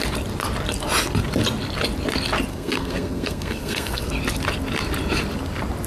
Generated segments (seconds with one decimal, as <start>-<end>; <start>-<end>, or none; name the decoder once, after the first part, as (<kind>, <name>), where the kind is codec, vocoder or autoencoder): 2.5-4.1 (codec, SNAC)